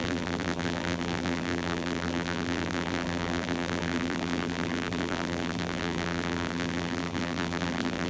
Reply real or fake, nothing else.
fake